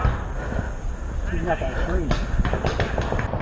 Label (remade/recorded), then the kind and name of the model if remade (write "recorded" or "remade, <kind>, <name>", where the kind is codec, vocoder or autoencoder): recorded